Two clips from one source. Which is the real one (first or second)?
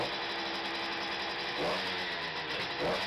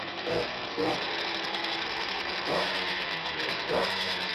first